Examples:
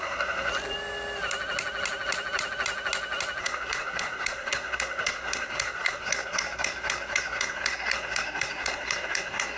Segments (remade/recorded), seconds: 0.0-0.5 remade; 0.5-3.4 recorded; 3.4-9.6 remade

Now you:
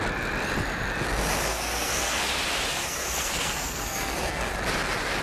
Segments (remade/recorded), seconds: 0.0-1.4 recorded; 1.4-2.3 remade; 2.3-2.8 recorded; 2.8-4.5 remade; 4.5-5.2 recorded

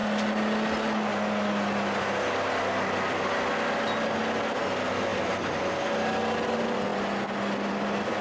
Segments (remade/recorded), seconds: 0.0-8.2 recorded